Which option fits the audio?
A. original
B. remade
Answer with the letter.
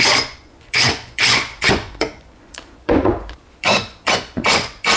B